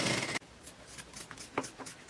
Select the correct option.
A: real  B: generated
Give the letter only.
A